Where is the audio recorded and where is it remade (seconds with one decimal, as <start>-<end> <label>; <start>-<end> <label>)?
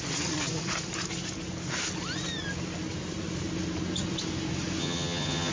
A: 0.0-4.8 recorded; 4.8-5.5 remade